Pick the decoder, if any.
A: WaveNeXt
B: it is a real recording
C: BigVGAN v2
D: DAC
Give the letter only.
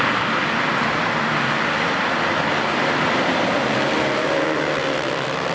C